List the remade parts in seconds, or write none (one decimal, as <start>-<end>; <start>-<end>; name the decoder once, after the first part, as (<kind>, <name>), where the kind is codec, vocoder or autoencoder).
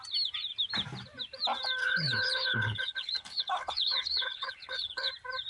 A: 1.8-5.1 (codec, HILCodec)